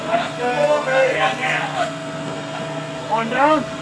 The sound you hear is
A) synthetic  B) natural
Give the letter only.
A